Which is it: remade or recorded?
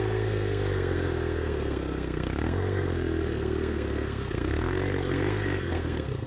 remade